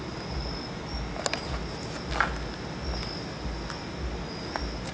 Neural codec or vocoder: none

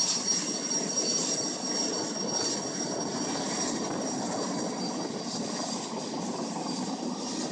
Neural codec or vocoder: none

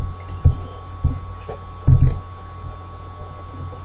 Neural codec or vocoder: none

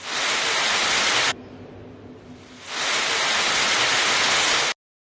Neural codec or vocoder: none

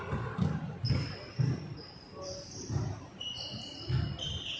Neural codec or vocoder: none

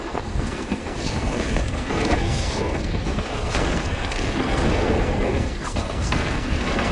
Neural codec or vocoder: codec, SNAC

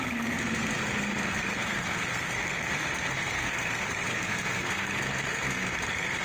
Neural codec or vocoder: codec, SNAC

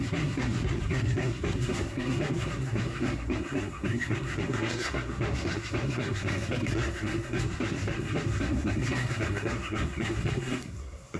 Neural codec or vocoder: codec, SNAC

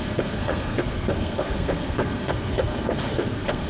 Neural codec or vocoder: codec, SNAC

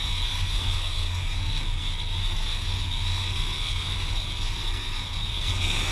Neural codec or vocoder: codec, SNAC